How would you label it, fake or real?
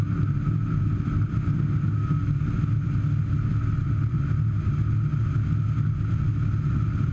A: real